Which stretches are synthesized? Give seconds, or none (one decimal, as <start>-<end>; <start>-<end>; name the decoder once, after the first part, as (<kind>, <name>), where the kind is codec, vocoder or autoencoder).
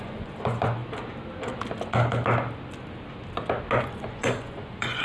0.0-0.8 (vocoder, Vocos); 3.8-5.0